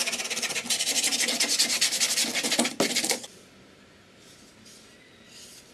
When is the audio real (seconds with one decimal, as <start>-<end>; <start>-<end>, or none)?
0.0-5.7